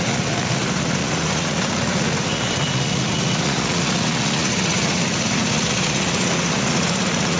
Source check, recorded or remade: remade